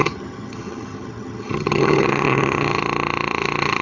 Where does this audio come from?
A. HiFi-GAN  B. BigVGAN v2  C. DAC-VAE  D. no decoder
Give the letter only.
A